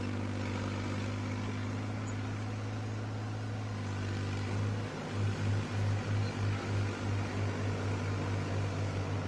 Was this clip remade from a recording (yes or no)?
no